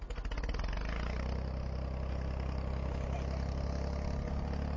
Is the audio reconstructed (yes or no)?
no